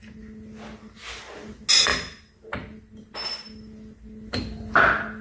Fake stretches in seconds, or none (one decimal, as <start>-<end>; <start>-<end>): none